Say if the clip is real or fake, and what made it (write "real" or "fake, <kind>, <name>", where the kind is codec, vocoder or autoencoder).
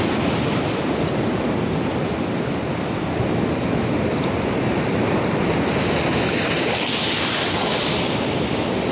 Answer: real